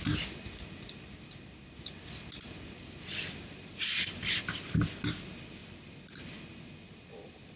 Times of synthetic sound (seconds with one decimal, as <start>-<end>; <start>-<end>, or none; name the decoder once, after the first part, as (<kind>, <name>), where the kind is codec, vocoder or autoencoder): none